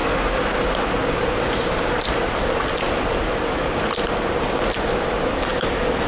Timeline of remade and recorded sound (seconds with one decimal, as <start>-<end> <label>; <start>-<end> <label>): 0.0-5.5 recorded; 5.5-6.1 remade